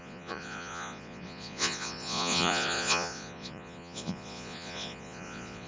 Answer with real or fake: fake